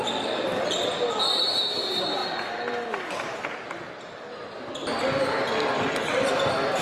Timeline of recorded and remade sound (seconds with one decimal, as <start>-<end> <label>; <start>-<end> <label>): 0.0-6.8 recorded